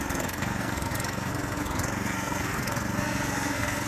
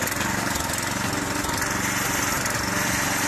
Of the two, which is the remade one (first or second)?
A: first